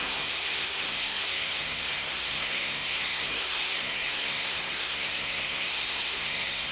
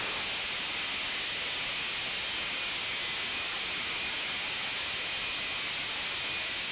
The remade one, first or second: first